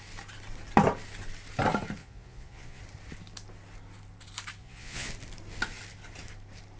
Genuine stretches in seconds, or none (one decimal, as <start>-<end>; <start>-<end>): 0.0-2.0; 2.8-4.6; 5.1-6.8